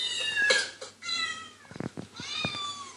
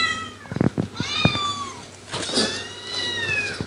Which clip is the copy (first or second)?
first